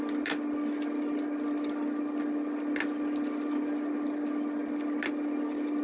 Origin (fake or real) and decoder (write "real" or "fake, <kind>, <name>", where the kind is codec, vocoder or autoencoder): real